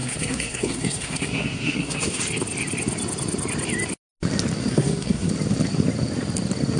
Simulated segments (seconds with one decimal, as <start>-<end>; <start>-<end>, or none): 0.0-2.2; 4.7-5.3